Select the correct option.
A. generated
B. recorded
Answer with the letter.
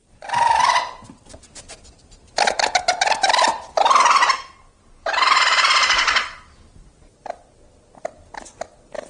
B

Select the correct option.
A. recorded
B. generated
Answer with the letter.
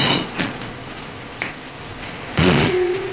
B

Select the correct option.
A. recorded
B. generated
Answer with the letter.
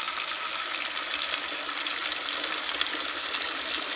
A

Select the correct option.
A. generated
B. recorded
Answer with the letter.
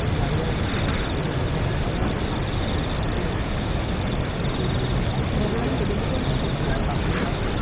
B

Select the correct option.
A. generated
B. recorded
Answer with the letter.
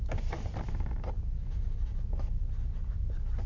B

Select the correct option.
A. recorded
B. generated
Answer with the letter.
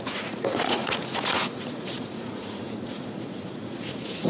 B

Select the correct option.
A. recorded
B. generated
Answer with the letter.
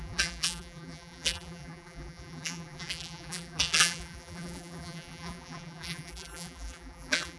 B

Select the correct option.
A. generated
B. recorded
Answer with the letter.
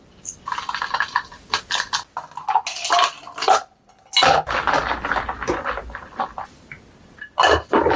B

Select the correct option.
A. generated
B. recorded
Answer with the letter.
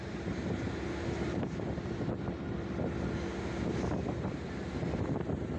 B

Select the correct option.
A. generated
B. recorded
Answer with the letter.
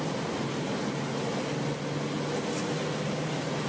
B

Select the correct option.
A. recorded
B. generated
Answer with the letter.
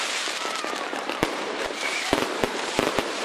B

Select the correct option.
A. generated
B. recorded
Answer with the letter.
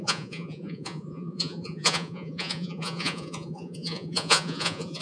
A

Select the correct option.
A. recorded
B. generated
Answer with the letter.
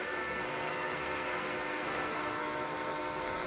B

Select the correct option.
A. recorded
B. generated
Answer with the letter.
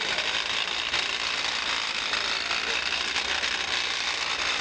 A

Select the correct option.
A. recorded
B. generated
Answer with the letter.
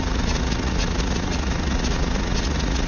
B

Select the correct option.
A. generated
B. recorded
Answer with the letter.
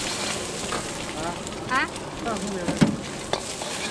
B